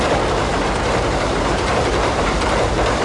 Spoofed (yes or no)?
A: yes